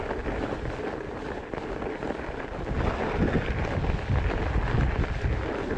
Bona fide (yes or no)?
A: yes